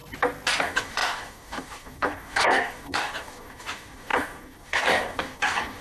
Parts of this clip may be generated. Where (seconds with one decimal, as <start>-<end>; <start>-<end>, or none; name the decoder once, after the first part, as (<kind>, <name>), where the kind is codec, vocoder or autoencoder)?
0.6-5.8 (codec, DAC)